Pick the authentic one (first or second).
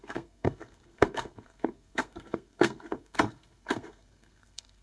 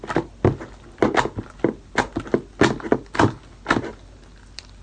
second